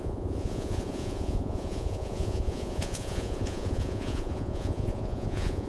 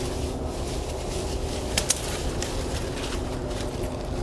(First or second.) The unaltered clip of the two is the second